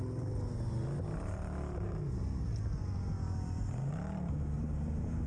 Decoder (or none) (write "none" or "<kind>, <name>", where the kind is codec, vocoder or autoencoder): none